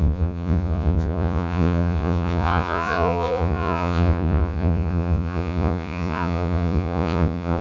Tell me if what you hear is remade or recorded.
remade